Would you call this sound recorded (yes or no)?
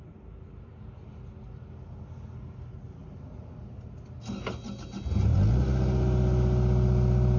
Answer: yes